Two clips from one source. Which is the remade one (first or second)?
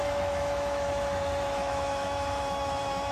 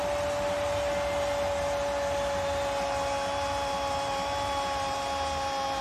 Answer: first